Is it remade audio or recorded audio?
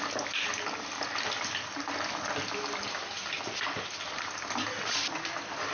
recorded